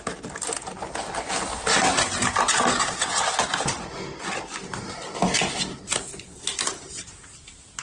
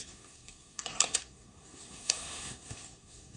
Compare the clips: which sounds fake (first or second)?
second